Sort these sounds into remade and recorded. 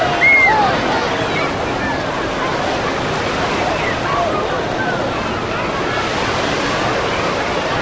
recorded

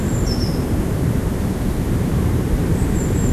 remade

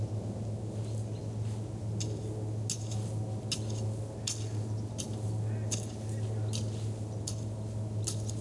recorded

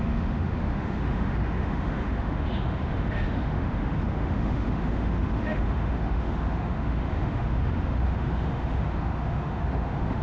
remade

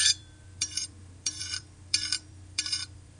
remade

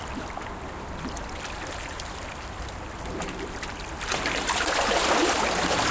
recorded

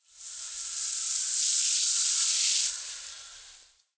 recorded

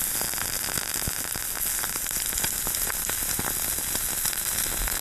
recorded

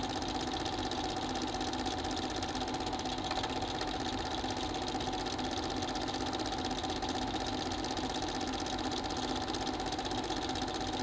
recorded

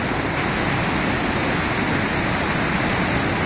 recorded